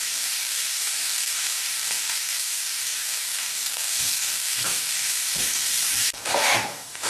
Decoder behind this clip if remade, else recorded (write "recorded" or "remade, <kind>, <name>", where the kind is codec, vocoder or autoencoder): remade, codec, DAC